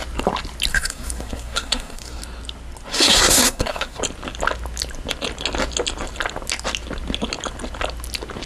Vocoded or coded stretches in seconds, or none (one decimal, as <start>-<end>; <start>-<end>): 0.7-2.2; 2.9-4.0